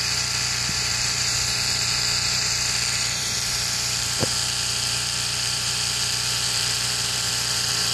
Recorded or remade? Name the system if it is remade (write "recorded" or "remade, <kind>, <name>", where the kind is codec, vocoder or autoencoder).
remade, vocoder, BigVGAN v2